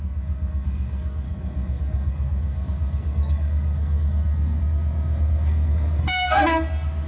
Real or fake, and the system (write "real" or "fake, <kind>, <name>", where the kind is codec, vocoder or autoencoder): fake, codec, SNAC